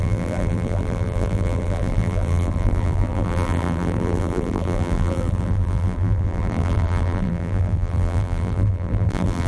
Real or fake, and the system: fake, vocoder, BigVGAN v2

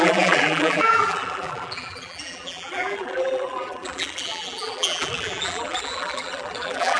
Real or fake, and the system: fake, vocoder, BigVGAN v2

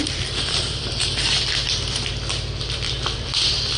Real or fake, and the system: fake, vocoder, BigVGAN v2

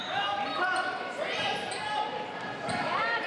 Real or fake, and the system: fake, vocoder, BigVGAN v2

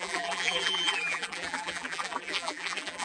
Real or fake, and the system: fake, vocoder, BigVGAN v2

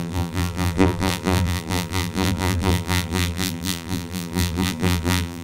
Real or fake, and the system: fake, vocoder, BigVGAN v2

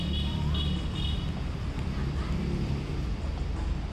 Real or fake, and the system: fake, vocoder, BigVGAN v2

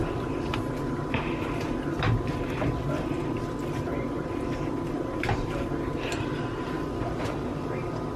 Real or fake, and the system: fake, vocoder, BigVGAN v2